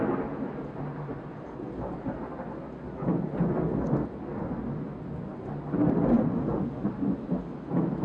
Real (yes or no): yes